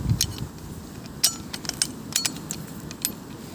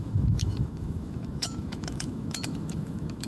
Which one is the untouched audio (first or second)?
first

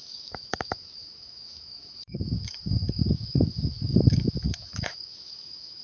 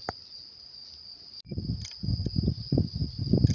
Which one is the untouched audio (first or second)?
second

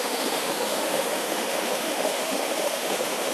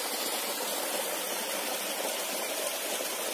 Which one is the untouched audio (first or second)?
second